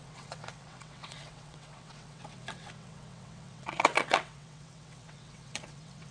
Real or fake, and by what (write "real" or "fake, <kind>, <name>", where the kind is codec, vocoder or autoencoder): fake, vocoder, WaveNeXt